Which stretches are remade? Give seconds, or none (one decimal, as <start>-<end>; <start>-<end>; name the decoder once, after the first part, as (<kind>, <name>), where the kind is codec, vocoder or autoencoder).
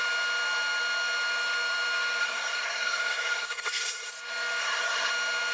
2.2-4.1 (codec, SNAC); 4.6-5.1